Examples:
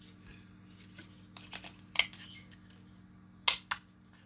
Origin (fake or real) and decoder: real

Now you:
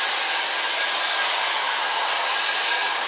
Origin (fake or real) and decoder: real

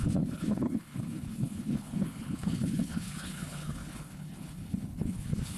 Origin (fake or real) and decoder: fake, codec, HILCodec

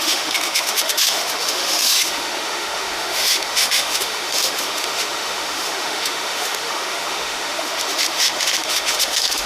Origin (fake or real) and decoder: fake, autoencoder, DAC-VAE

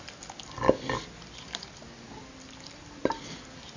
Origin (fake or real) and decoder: real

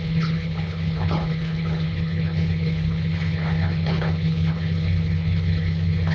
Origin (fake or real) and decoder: fake, codec, HILCodec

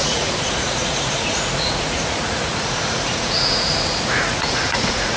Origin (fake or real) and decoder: fake, vocoder, Vocos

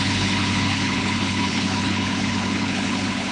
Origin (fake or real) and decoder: fake, codec, HILCodec